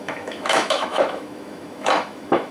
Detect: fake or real fake